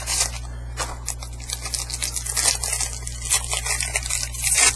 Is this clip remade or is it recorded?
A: recorded